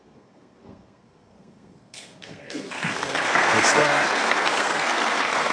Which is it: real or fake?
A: fake